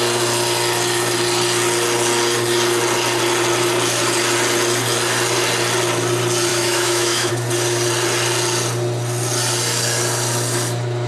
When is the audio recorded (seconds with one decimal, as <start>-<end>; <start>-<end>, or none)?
0.0-6.5; 7.3-11.1